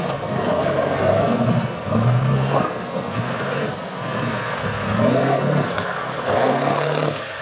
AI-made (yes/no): yes